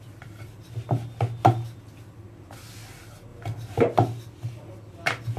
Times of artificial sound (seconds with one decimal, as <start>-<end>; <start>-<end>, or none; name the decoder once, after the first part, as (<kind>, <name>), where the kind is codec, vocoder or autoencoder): none